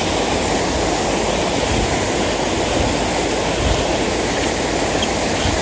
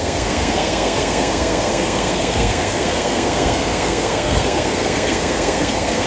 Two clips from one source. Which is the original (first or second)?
first